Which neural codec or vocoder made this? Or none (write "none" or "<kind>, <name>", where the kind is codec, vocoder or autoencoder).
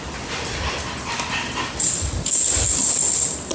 none